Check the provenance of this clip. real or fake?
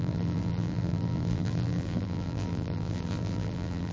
fake